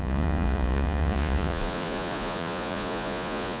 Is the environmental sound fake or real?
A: fake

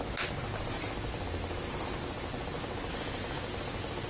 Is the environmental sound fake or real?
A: real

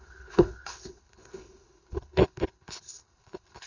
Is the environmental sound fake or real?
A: fake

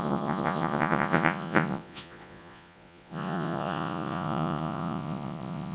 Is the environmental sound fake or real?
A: fake